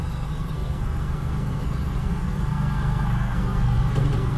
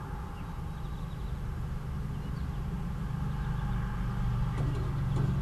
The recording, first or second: second